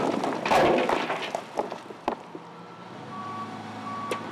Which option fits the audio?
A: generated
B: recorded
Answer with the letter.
B